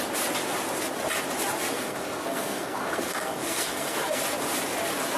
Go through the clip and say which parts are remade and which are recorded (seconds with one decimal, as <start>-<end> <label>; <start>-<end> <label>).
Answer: 0.0-1.7 recorded; 1.7-4.2 remade; 4.2-5.2 recorded